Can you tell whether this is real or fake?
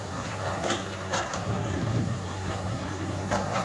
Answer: fake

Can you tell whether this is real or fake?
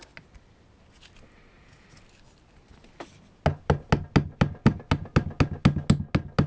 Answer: real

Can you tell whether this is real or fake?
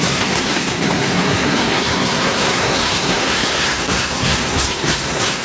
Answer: fake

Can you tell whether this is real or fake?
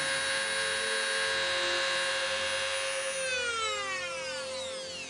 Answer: real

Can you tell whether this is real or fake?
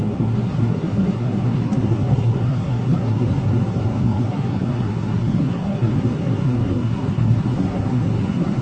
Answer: fake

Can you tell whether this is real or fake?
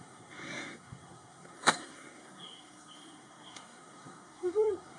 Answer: fake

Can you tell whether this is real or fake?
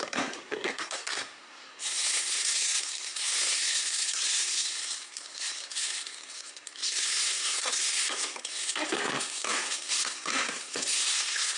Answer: fake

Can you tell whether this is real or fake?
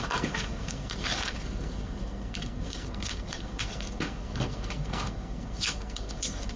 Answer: fake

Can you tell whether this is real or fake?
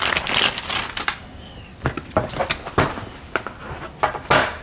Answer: real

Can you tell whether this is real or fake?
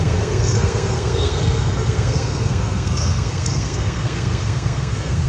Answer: fake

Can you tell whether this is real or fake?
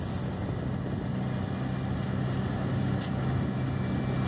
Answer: real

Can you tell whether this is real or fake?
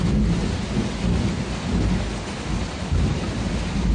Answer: real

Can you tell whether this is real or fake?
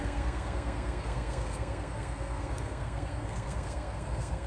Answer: fake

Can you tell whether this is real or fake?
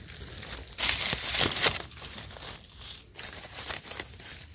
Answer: real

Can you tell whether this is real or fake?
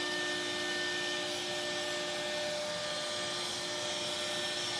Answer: real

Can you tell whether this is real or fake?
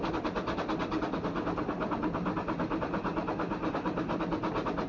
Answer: real